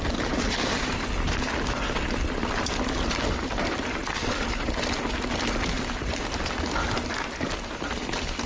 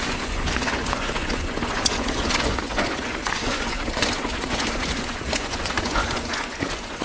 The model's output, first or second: second